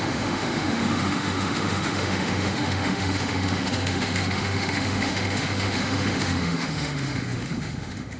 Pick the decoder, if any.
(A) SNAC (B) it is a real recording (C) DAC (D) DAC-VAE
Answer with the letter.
D